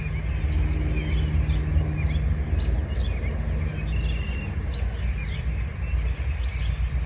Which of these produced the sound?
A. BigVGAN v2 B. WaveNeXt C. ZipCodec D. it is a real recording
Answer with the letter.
D